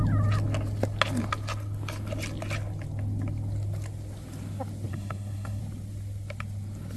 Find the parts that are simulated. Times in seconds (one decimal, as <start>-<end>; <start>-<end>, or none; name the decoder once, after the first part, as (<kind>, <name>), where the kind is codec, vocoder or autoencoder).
4.9-5.6 (codec, SNAC)